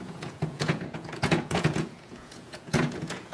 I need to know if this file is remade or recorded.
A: remade